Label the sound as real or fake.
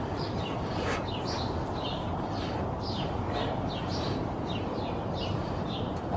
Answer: fake